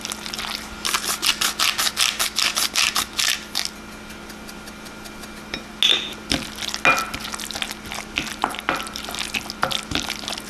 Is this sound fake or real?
real